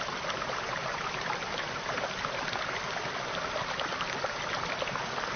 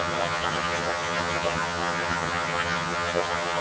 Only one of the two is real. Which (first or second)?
first